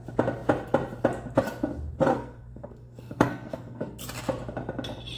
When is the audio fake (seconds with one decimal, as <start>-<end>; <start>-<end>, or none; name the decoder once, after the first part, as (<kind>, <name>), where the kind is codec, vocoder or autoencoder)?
2.1-4.0 (codec, SNAC)